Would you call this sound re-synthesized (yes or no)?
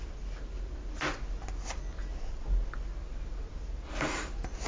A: no